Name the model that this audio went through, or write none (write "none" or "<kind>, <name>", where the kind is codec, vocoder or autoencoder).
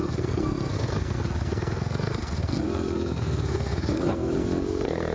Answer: codec, SNAC